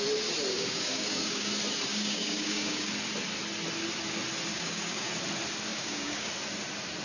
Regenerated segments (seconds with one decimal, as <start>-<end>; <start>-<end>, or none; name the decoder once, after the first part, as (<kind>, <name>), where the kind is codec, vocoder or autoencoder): 0.5-1.5 (codec, DAC); 1.9-2.9; 4.5-5.1; 5.7-6.3

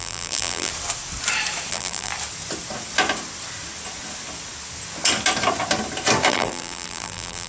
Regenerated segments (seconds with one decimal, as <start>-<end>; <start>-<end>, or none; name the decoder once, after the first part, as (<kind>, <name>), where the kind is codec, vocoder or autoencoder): 0.0-0.7 (vocoder, BigVGAN v2); 1.7-2.1; 6.3-7.5

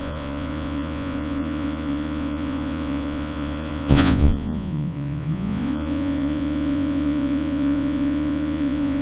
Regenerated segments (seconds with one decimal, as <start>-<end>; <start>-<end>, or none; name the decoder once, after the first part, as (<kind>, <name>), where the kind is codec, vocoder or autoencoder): 0.0-9.0 (vocoder, Vocos)

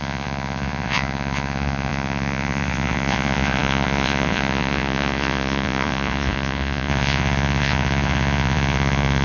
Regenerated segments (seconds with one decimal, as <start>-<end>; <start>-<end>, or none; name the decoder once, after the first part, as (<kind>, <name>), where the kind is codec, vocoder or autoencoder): 0.0-9.2 (vocoder, Vocos)

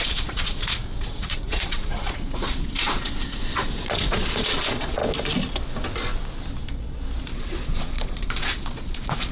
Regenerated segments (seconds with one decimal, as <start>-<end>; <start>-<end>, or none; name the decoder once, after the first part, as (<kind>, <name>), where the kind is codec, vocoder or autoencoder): 0.0-5.0 (vocoder, Vocos); 7.2-9.3

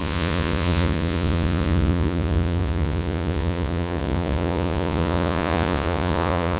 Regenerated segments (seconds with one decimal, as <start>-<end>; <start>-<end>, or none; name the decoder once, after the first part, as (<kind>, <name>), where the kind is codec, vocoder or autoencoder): 0.0-6.6 (vocoder, Vocos)

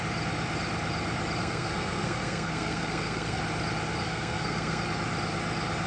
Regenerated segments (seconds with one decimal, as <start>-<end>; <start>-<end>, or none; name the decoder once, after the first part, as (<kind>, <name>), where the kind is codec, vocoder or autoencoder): 1.4-3.4 (codec, SNAC); 4.0-4.8

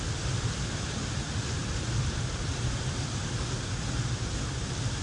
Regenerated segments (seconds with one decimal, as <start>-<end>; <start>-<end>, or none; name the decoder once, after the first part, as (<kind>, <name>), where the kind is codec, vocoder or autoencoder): none